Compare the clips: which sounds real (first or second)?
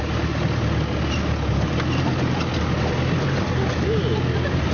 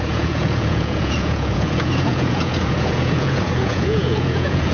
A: first